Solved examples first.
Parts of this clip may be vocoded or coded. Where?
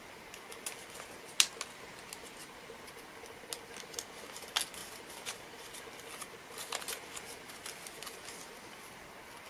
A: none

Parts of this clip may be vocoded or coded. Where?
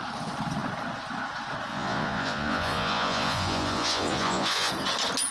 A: 1.7-4.7 (vocoder, Vocos)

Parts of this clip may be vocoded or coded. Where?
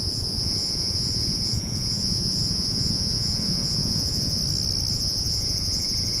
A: 0.0-4.4 (vocoder, Vocos); 4.9-6.2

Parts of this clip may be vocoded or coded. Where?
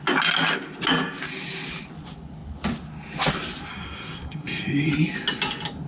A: 3.7-4.9 (codec, SNAC)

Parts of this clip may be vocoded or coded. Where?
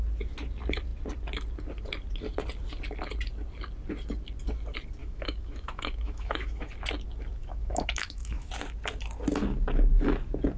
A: 5.0-6.7 (autoencoder, DAC-VAE); 7.4-8.5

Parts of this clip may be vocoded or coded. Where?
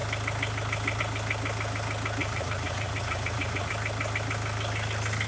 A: 2.2-3.7 (vocoder, Vocos)